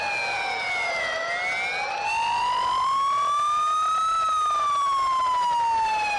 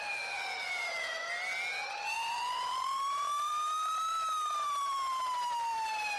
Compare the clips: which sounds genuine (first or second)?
first